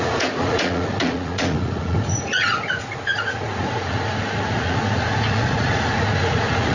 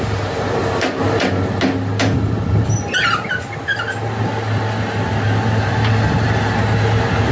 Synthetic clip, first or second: first